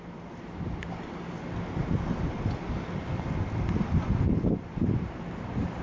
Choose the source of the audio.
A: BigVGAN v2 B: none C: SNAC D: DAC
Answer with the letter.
B